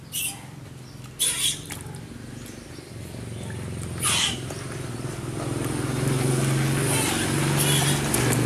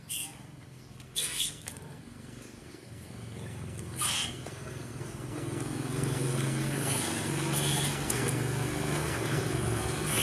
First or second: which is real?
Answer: first